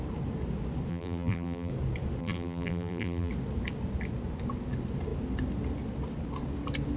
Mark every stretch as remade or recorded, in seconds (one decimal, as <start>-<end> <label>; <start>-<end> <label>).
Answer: 0.0-0.9 recorded; 0.9-1.7 remade; 1.7-2.2 recorded; 2.2-3.3 remade; 3.3-7.0 recorded